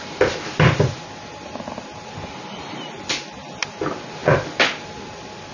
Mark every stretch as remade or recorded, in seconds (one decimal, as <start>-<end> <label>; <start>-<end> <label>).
0.0-5.5 recorded